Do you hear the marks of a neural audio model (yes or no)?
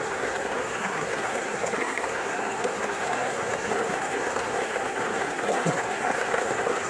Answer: yes